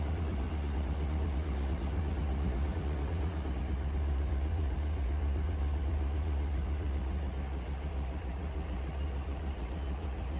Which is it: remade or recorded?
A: remade